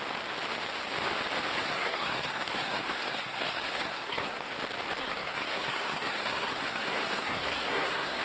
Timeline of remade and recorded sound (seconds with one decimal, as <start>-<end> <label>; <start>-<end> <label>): 0.0-1.6 recorded; 1.6-4.5 remade; 4.5-5.0 recorded; 5.0-8.2 remade